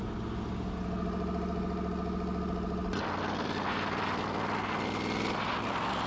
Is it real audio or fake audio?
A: real